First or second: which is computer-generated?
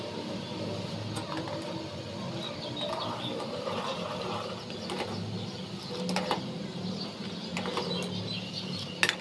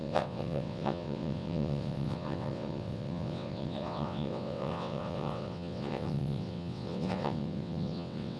second